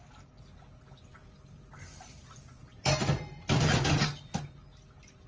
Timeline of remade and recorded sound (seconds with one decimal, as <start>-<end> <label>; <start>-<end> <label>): 0.0-1.2 recorded; 1.2-4.4 remade; 4.4-5.3 recorded